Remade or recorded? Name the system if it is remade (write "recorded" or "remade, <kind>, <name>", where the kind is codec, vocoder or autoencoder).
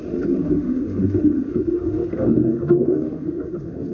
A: remade, autoencoder, DAC-VAE